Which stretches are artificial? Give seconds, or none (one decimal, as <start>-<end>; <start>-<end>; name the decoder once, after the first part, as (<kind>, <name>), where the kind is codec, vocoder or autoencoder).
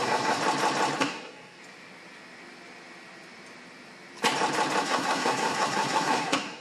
0.0-0.4 (codec, SNAC); 1.0-1.6; 4.8-6.6